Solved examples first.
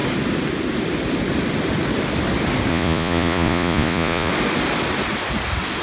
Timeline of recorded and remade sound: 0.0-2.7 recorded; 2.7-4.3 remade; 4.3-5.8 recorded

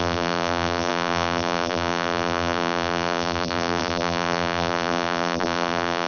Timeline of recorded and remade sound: 0.0-6.1 remade

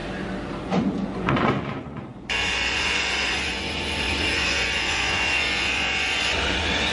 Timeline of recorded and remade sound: 0.0-0.6 recorded; 0.6-6.9 remade

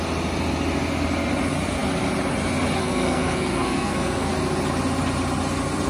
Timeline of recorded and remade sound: 0.0-2.8 recorded; 2.8-4.3 remade; 4.3-5.9 recorded

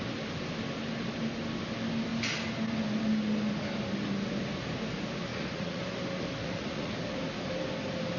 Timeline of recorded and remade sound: 0.0-5.3 recorded; 5.3-5.8 remade; 5.8-6.4 recorded; 6.4-7.0 remade; 7.0-8.2 recorded

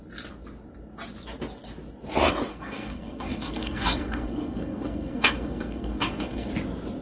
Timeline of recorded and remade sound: 0.0-2.5 recorded; 2.5-6.5 remade; 6.5-7.0 recorded

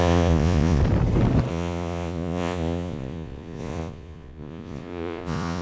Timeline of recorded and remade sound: 0.0-0.8 remade; 0.8-1.5 recorded; 1.5-5.6 remade